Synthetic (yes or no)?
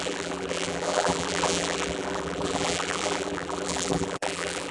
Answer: yes